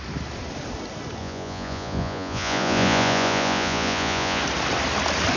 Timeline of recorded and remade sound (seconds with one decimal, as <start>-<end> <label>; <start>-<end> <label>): 0.0-1.2 recorded; 1.2-4.4 remade; 4.4-5.4 recorded